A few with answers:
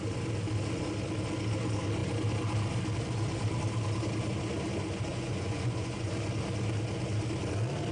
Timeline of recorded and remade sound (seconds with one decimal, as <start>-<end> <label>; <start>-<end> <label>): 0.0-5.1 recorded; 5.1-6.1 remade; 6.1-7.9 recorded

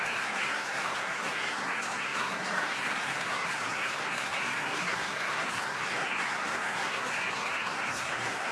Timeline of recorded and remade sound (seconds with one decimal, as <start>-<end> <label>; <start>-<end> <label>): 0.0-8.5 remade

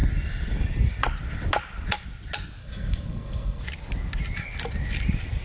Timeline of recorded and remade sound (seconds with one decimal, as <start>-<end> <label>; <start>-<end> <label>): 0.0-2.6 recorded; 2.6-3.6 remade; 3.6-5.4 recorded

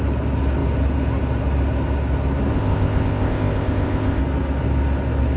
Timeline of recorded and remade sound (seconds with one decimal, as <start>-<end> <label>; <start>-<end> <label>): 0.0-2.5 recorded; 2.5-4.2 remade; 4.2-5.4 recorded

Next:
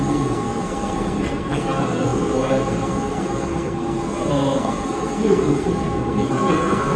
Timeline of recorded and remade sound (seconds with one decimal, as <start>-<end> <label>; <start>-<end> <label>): 0.0-7.0 remade

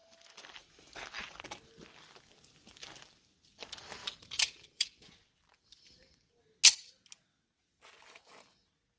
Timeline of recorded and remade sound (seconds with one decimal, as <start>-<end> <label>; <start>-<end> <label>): 0.0-0.6 remade; 0.6-4.0 recorded; 4.0-6.4 remade; 6.4-9.0 recorded